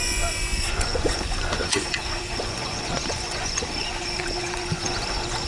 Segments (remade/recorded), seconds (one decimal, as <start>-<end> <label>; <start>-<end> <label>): 0.0-5.5 remade